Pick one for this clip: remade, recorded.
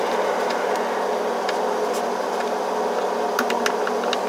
recorded